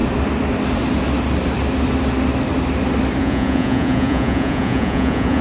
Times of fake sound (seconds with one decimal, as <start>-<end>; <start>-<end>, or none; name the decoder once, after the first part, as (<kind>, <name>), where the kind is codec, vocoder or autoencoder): 3.2-5.4 (vocoder, Vocos)